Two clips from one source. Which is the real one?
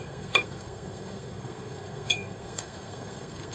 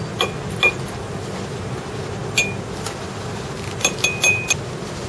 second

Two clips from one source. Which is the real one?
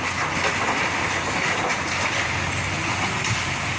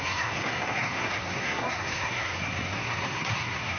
first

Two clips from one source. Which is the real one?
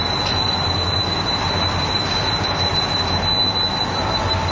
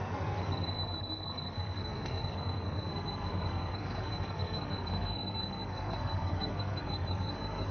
first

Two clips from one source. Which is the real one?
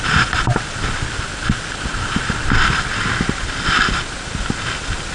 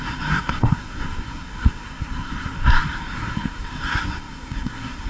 first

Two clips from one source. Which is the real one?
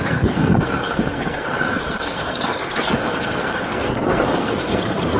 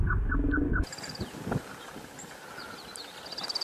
second